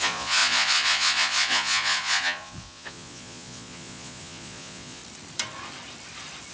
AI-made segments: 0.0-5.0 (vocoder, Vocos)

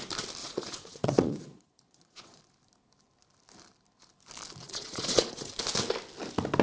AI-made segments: 0.4-2.4 (vocoder, Vocos); 4.6-5.5

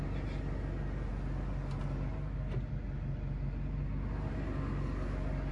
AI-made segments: none

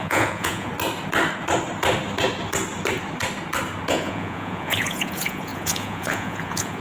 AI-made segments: 0.0-0.7 (vocoder, Vocos); 3.9-6.8

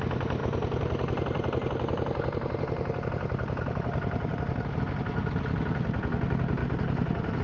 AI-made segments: none

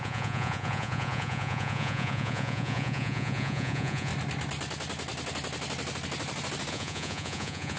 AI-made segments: 0.0-4.1 (vocoder, Vocos); 6.7-7.8